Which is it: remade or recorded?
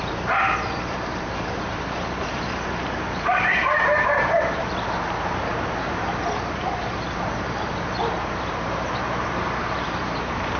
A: remade